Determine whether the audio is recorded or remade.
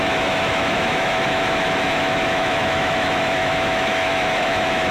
remade